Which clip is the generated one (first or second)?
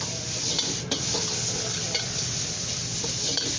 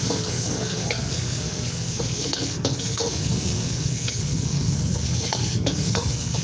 second